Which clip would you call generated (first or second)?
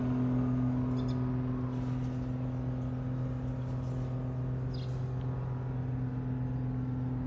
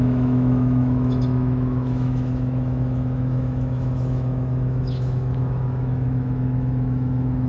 second